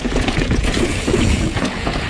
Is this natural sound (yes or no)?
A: no